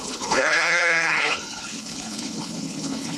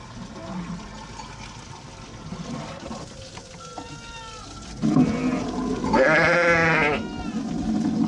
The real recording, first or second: second